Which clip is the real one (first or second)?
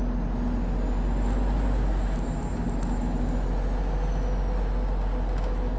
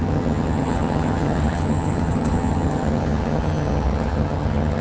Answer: first